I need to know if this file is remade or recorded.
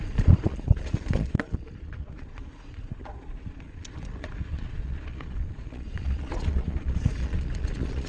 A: remade